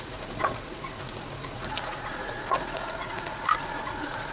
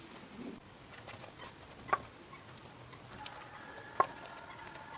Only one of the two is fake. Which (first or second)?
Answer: first